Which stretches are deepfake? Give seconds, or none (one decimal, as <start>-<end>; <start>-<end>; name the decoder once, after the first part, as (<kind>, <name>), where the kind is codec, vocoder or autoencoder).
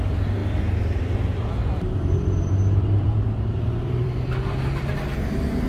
0.4-1.0 (vocoder, BigVGAN v2); 1.5-4.9